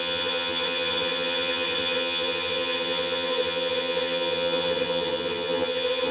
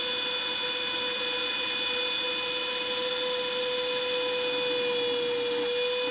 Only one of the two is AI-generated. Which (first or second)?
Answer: first